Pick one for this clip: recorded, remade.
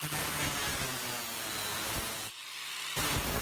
recorded